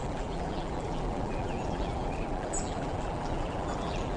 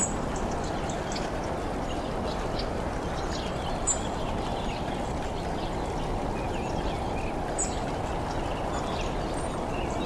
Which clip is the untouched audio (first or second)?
second